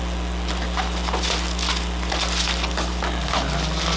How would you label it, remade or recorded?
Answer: recorded